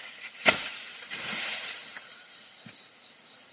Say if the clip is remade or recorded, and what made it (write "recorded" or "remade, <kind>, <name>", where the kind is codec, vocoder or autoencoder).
remade, vocoder, Vocos